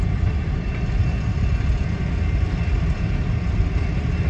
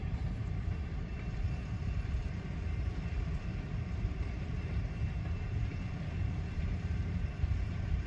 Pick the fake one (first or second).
second